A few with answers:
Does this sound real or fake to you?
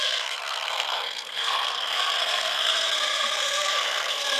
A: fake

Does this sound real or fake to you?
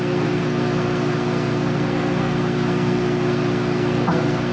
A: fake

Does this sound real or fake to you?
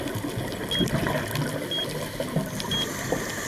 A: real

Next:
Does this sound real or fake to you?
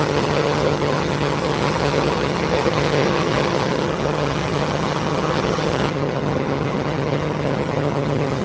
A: fake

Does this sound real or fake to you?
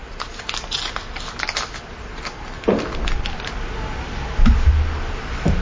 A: real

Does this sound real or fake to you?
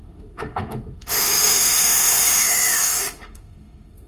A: fake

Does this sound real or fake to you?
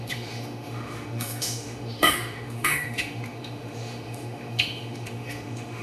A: fake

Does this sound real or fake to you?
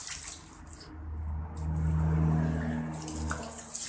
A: real